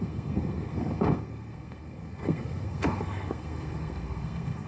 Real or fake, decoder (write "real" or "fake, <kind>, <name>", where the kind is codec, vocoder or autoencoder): fake, codec, SNAC